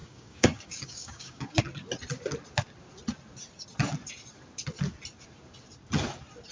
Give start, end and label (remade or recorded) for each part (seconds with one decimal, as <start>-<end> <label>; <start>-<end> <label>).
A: 0.0-1.6 remade; 1.6-6.5 recorded